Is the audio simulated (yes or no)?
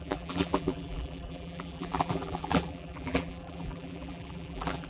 yes